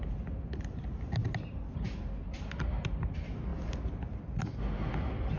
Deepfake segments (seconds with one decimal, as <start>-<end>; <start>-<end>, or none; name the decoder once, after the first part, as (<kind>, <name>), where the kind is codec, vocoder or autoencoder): none